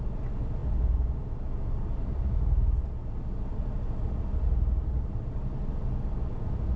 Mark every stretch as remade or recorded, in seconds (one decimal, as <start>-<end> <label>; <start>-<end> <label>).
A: 0.0-6.8 recorded